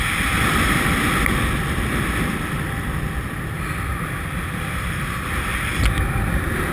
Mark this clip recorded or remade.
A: recorded